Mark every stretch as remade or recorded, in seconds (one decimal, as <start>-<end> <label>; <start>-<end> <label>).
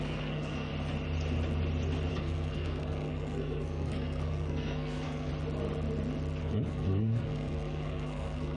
0.0-0.7 remade; 0.7-2.1 recorded; 2.1-5.3 remade; 5.3-6.4 recorded; 6.4-8.6 remade